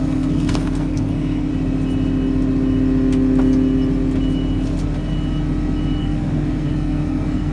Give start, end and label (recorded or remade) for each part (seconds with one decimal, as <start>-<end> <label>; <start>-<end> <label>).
0.0-1.5 remade; 1.5-6.0 recorded; 6.0-7.5 remade

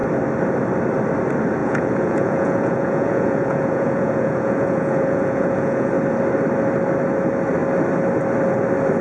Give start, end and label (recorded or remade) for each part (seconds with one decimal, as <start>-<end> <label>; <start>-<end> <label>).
0.0-1.6 recorded; 1.6-5.9 remade; 5.9-9.0 recorded

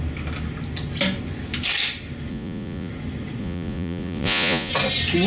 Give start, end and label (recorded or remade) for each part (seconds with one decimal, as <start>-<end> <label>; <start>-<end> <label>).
0.0-2.3 recorded; 2.3-2.9 remade; 2.9-3.4 recorded; 3.4-4.7 remade; 4.7-5.3 recorded

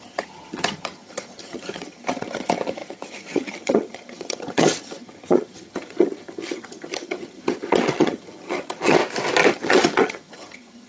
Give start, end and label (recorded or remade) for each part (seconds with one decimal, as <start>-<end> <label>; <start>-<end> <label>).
0.0-9.0 remade; 9.0-9.5 recorded; 9.5-10.9 remade